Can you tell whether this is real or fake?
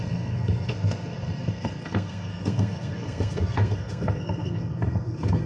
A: fake